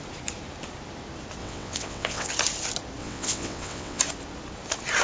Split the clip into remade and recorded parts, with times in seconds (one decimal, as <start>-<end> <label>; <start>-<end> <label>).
0.0-1.4 recorded; 1.4-2.3 remade; 2.3-3.0 recorded; 3.0-4.0 remade; 4.0-5.0 recorded